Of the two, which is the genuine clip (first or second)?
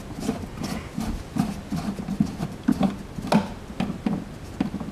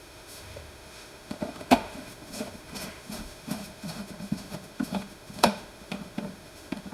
first